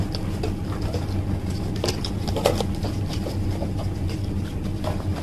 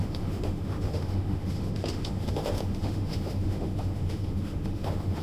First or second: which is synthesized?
second